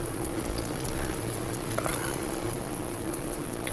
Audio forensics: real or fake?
fake